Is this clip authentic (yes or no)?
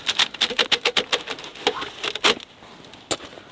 yes